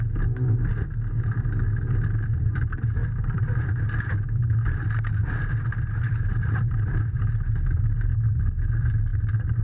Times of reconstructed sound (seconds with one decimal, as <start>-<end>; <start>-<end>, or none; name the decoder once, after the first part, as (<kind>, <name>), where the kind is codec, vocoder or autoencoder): 3.0-3.7 (vocoder, BigVGAN v2); 5.2-7.2